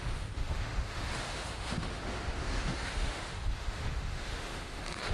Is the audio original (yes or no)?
no